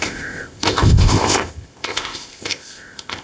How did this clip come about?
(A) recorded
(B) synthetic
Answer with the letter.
B